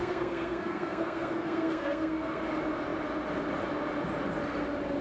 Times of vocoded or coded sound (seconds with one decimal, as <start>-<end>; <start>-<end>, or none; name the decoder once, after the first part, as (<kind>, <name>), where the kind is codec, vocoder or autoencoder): 0.0-2.4 (codec, SNAC)